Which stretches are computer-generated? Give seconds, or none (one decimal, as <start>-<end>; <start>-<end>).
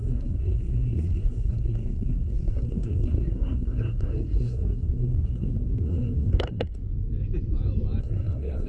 0.0-6.8; 8.0-8.7